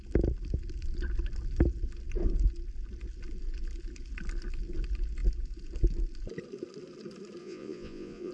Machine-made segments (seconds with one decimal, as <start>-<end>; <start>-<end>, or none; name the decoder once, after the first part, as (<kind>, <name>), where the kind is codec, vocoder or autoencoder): 7.4-8.3 (vocoder, Vocos)